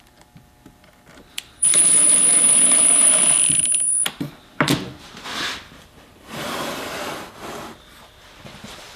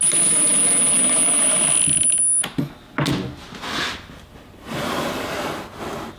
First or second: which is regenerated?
first